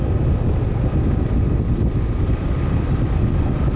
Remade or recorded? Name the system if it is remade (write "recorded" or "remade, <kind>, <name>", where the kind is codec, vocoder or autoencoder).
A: recorded